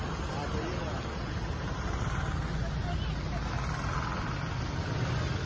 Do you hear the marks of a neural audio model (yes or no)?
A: no